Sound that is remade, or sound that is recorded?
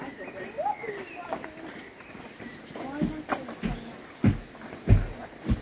recorded